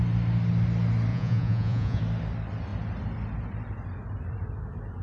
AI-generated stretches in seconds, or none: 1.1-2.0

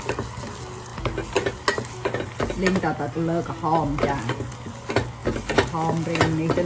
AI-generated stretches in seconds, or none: none